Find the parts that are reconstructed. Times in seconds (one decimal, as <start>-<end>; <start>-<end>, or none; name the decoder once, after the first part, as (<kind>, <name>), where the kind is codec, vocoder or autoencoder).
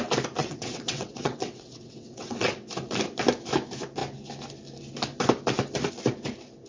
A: 0.4-2.7 (vocoder, WaveNeXt)